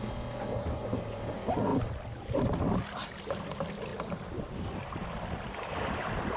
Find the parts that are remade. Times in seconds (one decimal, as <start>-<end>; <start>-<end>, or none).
none